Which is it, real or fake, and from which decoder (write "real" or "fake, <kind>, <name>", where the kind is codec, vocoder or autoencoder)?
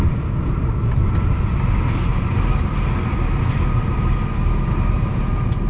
real